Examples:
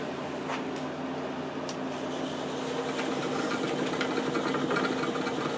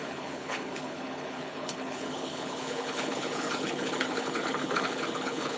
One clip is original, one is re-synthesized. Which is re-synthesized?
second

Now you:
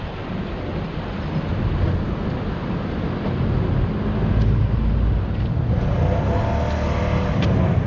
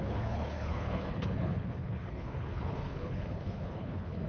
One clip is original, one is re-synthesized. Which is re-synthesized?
second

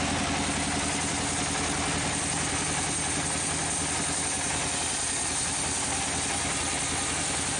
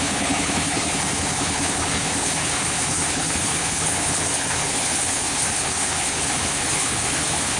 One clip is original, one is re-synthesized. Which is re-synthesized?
second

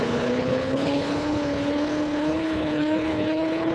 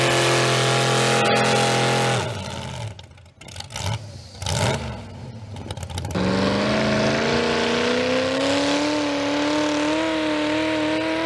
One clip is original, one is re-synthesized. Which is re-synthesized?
first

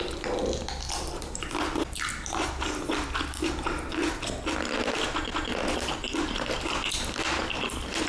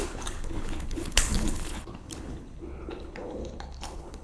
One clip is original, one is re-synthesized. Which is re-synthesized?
second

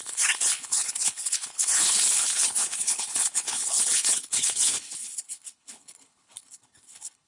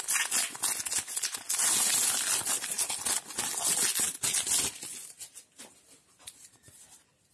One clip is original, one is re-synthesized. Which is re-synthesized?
first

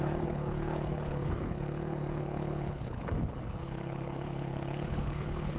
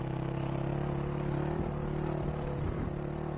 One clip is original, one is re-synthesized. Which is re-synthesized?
first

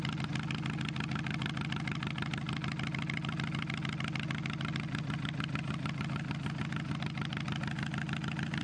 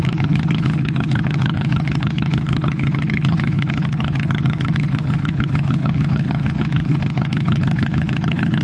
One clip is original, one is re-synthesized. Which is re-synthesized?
second